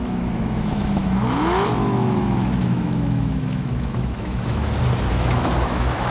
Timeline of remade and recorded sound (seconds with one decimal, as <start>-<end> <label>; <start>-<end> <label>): 0.0-4.6 remade; 4.6-5.1 recorded; 5.1-6.1 remade